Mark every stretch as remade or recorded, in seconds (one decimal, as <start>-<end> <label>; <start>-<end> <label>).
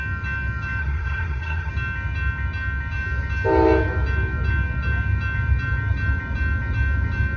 0.0-0.8 recorded; 0.8-1.7 remade; 1.7-7.4 recorded